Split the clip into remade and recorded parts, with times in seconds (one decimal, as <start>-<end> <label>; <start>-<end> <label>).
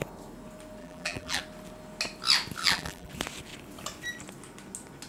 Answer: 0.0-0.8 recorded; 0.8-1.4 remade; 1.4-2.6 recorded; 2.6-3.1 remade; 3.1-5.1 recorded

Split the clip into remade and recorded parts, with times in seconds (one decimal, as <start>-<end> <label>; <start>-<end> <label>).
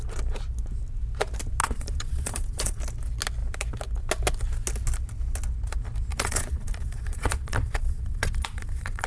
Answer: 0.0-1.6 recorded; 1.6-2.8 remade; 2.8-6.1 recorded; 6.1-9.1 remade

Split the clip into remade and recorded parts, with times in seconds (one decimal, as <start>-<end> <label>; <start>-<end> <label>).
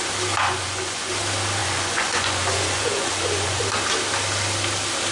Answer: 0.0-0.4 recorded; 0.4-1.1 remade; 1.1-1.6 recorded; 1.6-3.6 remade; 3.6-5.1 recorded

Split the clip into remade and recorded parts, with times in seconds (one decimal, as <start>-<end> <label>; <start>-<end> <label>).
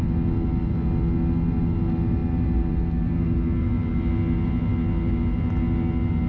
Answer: 0.0-6.3 recorded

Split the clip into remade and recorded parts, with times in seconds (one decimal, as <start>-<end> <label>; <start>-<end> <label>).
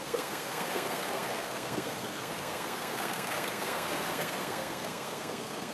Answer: 0.0-5.7 remade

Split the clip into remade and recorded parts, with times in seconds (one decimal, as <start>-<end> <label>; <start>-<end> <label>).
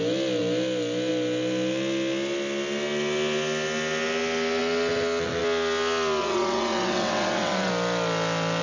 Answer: 0.0-6.2 recorded; 6.2-7.7 remade; 7.7-8.6 recorded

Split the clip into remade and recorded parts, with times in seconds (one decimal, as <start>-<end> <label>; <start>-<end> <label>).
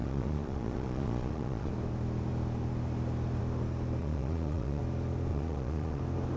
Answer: 0.0-1.7 remade; 1.7-4.0 recorded; 4.0-4.8 remade; 4.8-5.3 recorded; 5.3-6.0 remade; 6.0-6.4 recorded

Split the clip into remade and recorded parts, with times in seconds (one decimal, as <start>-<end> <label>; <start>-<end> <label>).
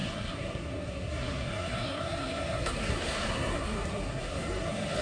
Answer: 0.0-5.0 remade